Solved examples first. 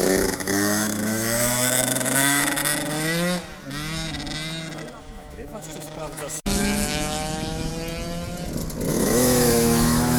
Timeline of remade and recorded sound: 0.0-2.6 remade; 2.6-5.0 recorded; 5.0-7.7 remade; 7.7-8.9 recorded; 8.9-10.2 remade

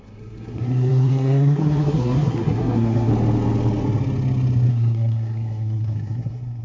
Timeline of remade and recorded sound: 0.0-3.1 remade; 3.1-4.7 recorded; 4.7-6.6 remade

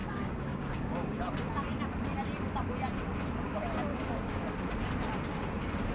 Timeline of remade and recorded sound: 0.0-1.2 remade; 1.2-3.9 recorded; 3.9-4.4 remade; 4.4-5.9 recorded